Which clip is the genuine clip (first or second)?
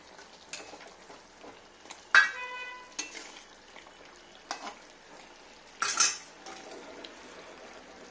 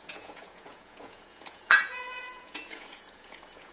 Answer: first